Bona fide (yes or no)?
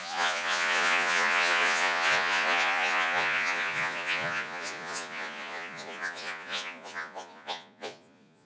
no